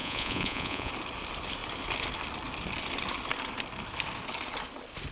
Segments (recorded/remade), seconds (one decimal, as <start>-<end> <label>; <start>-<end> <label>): 0.0-0.9 remade; 0.9-5.1 recorded